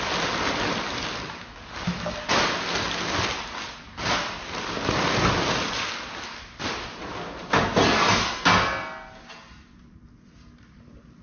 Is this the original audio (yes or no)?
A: yes